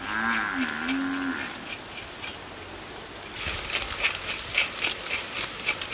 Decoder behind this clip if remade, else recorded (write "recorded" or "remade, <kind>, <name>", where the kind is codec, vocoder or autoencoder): recorded